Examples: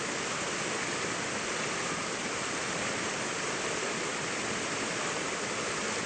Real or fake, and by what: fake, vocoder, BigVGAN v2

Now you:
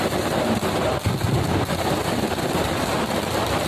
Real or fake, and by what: fake, vocoder, BigVGAN v2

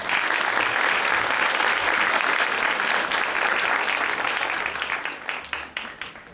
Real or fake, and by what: real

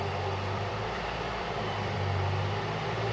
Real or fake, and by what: fake, vocoder, BigVGAN v2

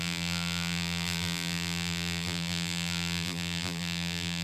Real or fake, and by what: fake, vocoder, BigVGAN v2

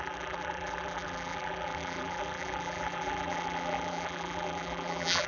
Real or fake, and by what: fake, vocoder, BigVGAN v2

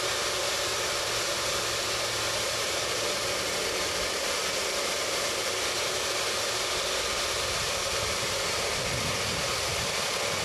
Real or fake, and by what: fake, vocoder, BigVGAN v2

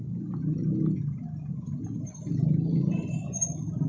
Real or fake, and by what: real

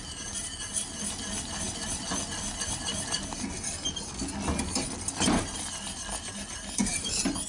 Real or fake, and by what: real